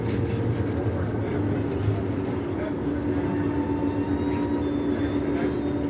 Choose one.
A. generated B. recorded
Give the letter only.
B